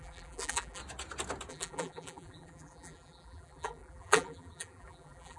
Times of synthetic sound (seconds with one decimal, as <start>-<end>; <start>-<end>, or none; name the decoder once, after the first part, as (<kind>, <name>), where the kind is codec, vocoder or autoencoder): 0.0-0.8 (vocoder, BigVGAN v2); 1.5-5.4